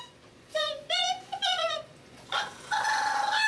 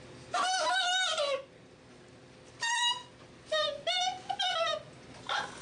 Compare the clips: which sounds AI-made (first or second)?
first